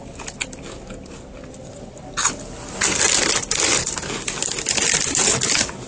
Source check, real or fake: real